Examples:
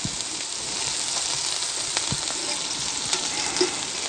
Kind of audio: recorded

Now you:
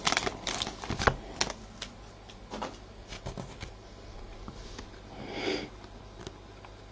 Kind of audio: recorded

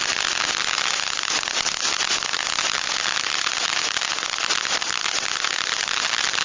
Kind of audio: recorded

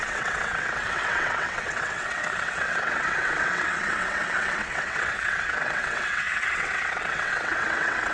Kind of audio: remade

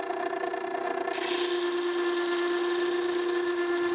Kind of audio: recorded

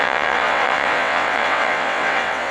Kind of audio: remade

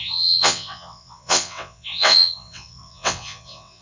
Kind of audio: remade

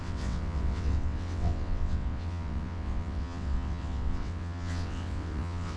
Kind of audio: remade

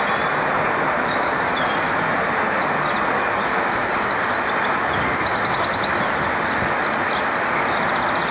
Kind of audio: recorded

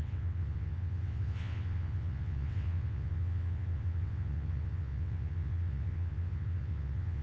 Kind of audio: remade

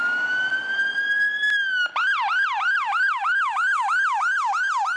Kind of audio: recorded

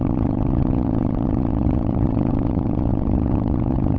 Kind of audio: remade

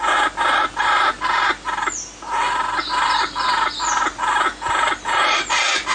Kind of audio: recorded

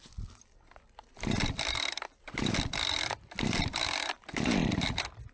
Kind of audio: recorded